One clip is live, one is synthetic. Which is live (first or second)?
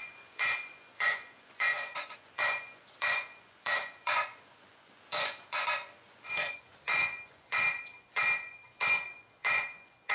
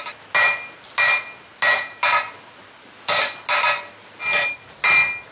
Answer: second